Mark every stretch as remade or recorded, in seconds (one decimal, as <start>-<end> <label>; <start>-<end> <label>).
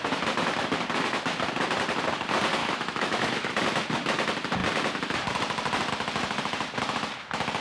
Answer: 0.0-2.6 recorded; 2.6-3.5 remade; 3.5-7.6 recorded